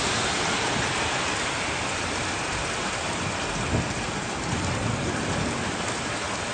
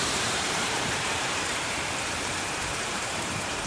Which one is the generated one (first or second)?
second